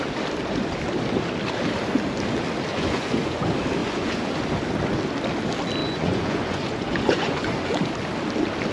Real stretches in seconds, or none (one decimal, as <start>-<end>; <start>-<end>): 0.0-2.7; 3.4-3.8; 4.4-5.8; 7.8-8.7